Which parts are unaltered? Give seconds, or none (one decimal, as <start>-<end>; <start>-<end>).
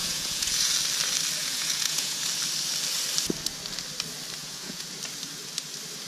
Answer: 0.7-1.4; 2.2-4.4; 4.9-6.1